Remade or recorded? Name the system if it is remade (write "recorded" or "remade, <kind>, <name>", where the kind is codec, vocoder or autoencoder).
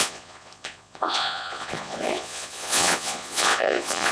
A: remade, vocoder, Vocos